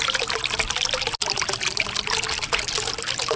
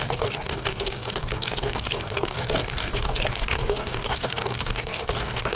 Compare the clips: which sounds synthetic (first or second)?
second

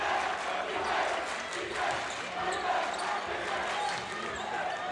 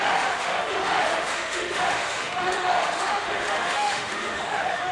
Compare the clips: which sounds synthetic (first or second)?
second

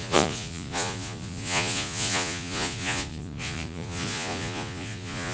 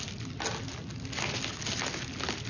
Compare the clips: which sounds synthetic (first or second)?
first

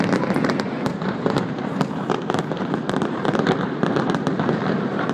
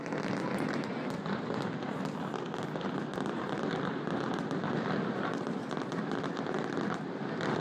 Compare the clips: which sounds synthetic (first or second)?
first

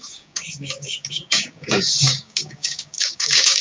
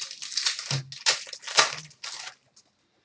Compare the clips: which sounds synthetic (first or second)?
first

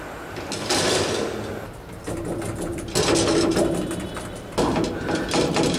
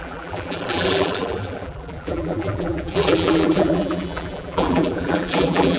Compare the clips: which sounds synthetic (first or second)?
second